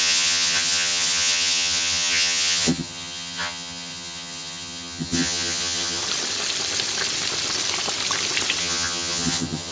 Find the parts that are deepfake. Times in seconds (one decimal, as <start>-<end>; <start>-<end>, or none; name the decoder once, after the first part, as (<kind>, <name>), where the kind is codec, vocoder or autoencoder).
0.0-6.0 (vocoder, HiFi-GAN); 8.6-9.7